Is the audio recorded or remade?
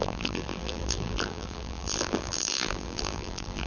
remade